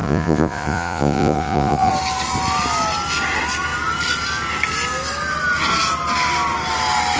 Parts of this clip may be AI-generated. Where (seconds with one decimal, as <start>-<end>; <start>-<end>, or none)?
0.0-1.9